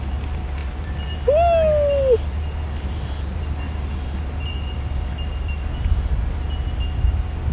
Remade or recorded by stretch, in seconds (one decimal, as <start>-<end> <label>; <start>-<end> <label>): 0.0-7.5 recorded